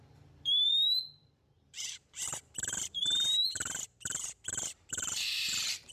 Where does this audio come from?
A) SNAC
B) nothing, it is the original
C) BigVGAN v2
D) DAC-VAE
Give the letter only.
C